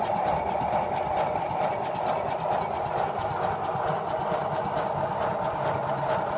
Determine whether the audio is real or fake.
real